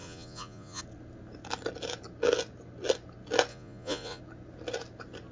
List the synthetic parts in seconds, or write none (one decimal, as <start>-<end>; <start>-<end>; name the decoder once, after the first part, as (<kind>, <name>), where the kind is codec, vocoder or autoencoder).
0.0-0.8 (vocoder, Vocos); 3.5-4.2